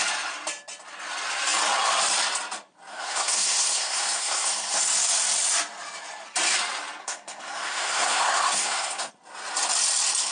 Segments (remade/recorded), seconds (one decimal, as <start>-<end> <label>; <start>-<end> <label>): 0.0-2.9 recorded; 2.9-4.8 remade; 4.8-7.0 recorded; 7.0-9.1 remade; 9.1-10.3 recorded